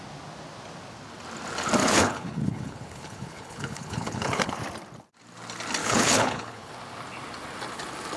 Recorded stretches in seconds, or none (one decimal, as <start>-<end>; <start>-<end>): 0.0-1.8; 4.5-5.8; 6.7-8.2